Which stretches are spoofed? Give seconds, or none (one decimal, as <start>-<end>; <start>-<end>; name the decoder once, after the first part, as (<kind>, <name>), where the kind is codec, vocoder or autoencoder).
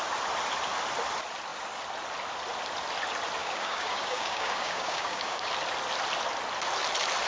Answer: 3.4-5.5 (codec, DAC)